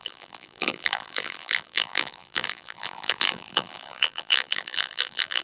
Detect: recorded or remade remade